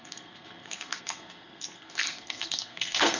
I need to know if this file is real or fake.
fake